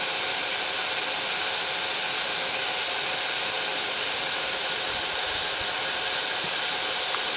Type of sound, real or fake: real